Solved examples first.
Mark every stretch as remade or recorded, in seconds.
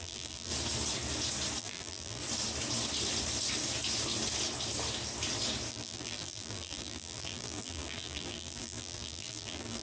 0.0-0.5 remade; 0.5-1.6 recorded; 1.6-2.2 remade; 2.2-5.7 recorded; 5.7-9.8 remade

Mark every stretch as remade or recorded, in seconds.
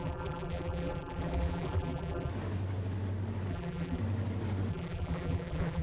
0.0-2.3 remade; 2.3-3.5 recorded; 3.5-4.0 remade; 4.0-4.7 recorded; 4.7-5.8 remade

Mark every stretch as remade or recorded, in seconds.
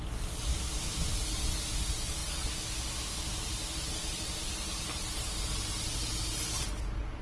0.0-0.5 recorded; 0.5-1.0 remade; 1.0-7.2 recorded